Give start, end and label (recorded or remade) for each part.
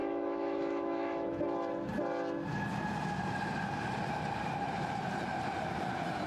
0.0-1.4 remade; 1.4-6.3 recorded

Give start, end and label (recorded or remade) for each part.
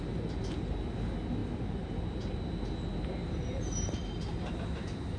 0.0-5.2 recorded